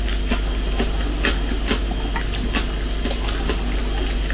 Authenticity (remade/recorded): recorded